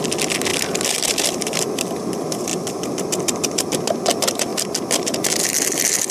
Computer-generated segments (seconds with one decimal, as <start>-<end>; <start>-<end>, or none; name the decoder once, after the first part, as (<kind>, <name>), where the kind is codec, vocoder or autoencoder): none